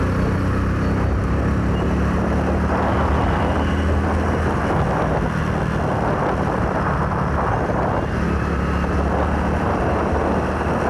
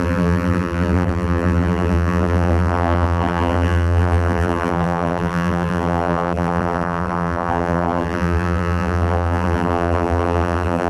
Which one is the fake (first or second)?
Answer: second